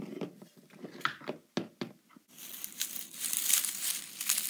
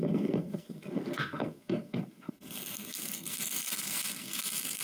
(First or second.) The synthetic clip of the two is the second